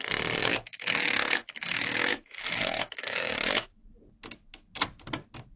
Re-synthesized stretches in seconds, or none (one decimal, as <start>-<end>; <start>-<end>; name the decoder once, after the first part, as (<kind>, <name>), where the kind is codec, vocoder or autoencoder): 0.4-3.8 (autoencoder, DAC-VAE)